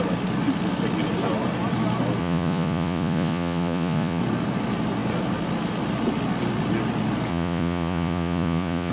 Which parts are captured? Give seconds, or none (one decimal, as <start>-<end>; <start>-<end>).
0.0-2.2; 4.2-7.3